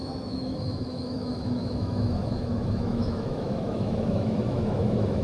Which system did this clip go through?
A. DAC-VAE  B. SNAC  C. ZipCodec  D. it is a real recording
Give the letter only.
A